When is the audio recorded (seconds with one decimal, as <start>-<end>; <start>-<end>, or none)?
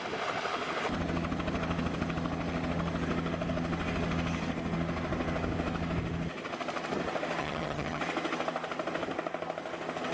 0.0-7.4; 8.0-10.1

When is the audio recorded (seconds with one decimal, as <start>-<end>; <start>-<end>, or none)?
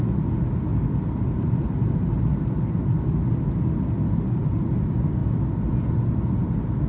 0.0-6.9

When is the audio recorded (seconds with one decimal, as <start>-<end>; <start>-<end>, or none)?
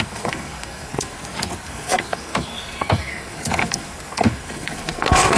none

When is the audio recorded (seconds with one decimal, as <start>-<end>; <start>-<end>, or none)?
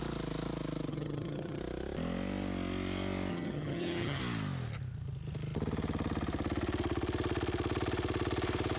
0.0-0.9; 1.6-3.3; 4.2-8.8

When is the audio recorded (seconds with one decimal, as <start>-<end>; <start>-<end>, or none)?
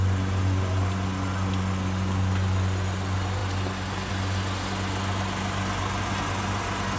0.0-7.0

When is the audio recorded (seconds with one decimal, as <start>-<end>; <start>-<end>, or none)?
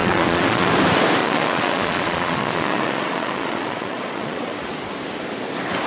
0.7-1.2; 4.7-5.9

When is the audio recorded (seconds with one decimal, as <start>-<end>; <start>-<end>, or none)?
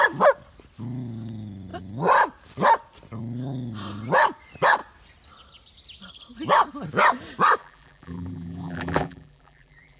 0.0-7.6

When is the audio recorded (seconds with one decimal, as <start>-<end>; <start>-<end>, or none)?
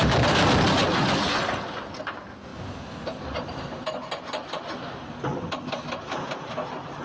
0.0-7.0